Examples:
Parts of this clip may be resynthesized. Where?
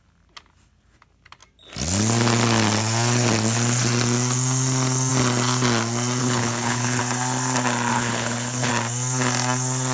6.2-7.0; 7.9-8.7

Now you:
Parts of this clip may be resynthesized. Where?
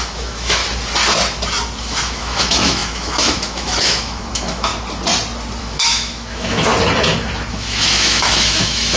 0.0-0.6; 1.8-4.7; 5.6-6.7; 7.5-9.0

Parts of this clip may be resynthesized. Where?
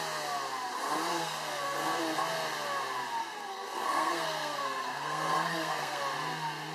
1.1-2.0; 3.2-6.0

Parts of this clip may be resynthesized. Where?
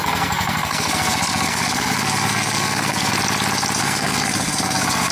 0.0-3.1; 3.8-5.1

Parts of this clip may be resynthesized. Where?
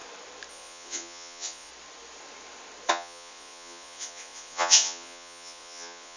0.5-1.7; 2.9-6.2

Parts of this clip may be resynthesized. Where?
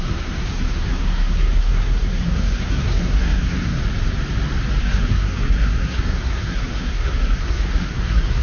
0.0-3.8; 4.8-8.4